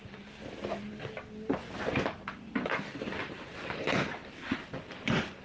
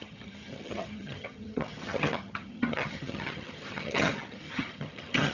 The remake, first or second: second